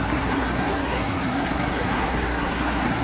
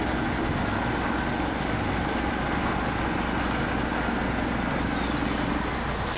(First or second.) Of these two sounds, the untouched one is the second